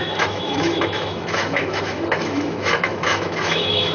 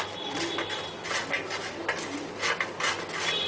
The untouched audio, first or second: second